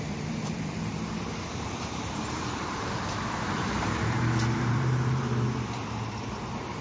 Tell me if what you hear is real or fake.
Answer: fake